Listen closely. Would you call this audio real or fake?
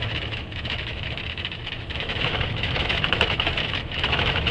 fake